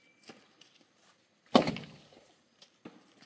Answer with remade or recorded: recorded